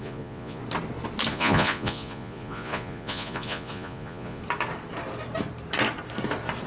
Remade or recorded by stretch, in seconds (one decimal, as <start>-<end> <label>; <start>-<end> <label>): 0.0-0.6 remade; 0.6-1.3 recorded; 1.3-4.4 remade; 4.4-6.7 recorded

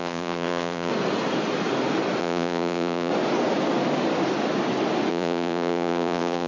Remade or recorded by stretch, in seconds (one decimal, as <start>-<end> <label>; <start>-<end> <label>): 0.0-0.9 remade; 0.9-2.2 recorded; 2.2-3.1 remade; 3.1-5.1 recorded; 5.1-6.5 remade